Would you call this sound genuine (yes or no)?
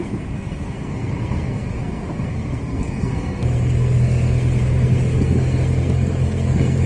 no